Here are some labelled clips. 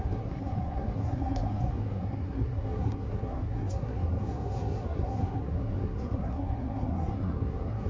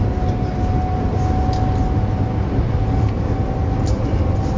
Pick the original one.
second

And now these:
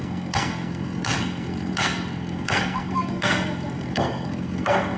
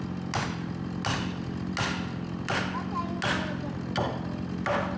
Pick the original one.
second